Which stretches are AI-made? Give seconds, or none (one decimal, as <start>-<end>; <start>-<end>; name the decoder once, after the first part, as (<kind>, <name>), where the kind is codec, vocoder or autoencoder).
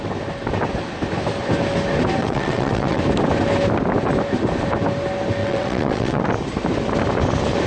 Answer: 2.2-3.0 (vocoder, WaveNeXt); 5.4-6.2